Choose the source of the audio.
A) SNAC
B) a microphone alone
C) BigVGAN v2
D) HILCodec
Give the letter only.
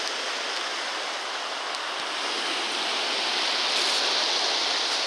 B